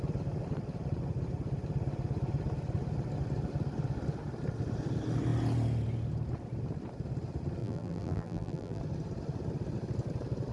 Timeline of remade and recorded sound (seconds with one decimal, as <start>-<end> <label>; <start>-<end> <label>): 0.0-7.6 recorded; 7.6-8.8 remade; 8.8-10.5 recorded